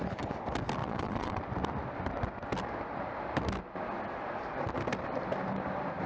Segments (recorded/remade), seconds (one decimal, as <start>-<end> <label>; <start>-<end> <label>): 0.0-0.8 recorded; 0.8-1.4 remade; 1.4-6.1 recorded

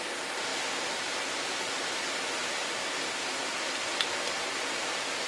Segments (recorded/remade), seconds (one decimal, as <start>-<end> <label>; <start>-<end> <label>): 0.0-5.3 recorded

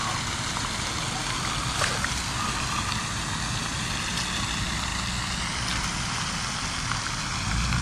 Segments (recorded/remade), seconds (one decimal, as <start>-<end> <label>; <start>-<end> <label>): 0.0-7.8 recorded

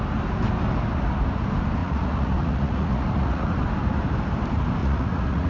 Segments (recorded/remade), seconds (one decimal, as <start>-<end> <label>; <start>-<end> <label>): 0.0-1.8 recorded; 1.8-3.6 remade; 3.6-4.8 recorded; 4.8-5.5 remade

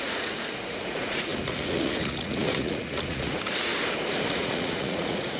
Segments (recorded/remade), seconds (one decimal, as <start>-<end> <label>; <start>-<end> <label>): 0.0-3.7 remade; 3.7-4.3 recorded; 4.3-5.4 remade

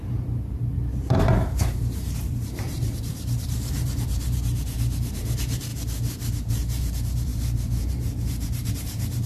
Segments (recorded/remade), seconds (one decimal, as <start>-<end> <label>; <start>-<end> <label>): 0.0-5.7 remade; 5.7-6.3 recorded; 6.3-9.3 remade

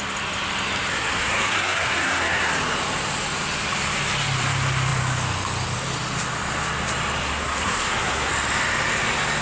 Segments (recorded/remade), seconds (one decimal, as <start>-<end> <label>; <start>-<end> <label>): 0.0-0.9 recorded; 0.9-2.5 remade; 2.5-7.2 recorded; 7.2-8.3 remade; 8.3-9.4 recorded